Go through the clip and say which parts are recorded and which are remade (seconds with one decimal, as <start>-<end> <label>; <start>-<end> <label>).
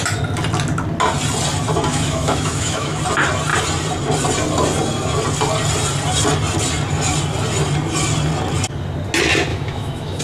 0.0-1.9 recorded; 1.9-3.0 remade; 3.0-9.5 recorded; 9.5-10.2 remade